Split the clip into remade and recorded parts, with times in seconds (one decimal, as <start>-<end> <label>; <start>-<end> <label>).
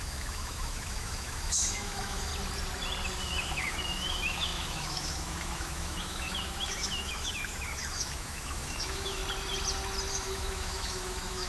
0.0-2.3 remade; 2.3-3.2 recorded; 3.2-9.2 remade; 9.2-10.1 recorded; 10.1-11.5 remade